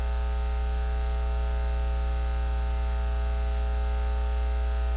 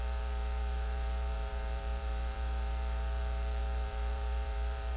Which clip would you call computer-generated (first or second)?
second